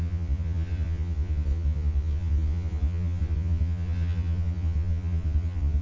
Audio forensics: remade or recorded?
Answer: remade